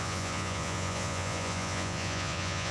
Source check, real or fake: fake